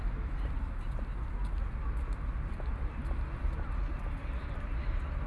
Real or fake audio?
real